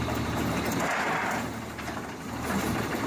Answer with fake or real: real